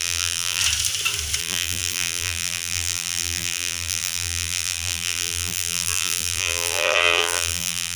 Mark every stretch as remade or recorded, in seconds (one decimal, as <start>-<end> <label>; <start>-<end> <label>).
0.0-0.6 remade; 0.6-1.4 recorded; 1.4-8.0 remade